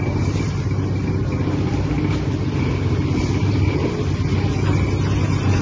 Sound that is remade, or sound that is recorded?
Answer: recorded